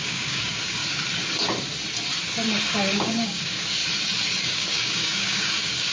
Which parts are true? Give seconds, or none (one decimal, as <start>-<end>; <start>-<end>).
0.8-2.7; 3.8-4.4